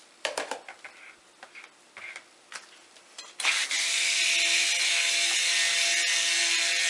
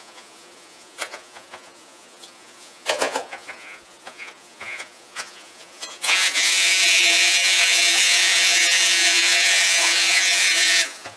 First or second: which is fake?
second